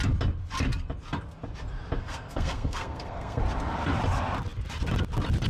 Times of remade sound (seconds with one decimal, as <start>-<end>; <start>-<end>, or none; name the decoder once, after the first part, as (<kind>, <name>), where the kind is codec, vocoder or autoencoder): 2.0-3.4 (codec, SNAC)